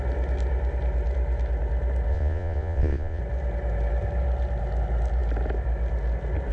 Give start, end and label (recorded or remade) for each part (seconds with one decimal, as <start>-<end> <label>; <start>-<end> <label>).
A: 0.0-2.1 recorded; 2.1-3.2 remade; 3.2-6.5 recorded